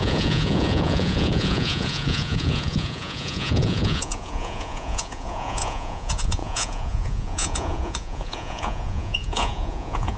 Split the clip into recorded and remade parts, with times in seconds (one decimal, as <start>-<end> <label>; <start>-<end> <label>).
0.0-10.2 remade